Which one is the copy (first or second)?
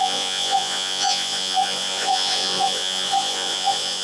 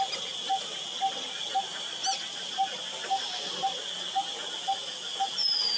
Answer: first